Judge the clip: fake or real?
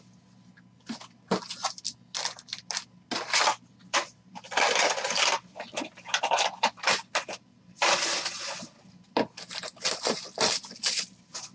real